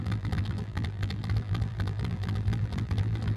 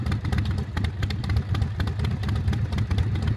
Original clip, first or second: second